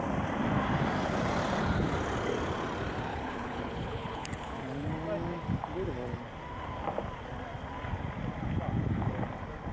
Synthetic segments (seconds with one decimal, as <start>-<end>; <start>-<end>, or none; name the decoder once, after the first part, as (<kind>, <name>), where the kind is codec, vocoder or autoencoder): 3.1-4.6 (codec, HILCodec)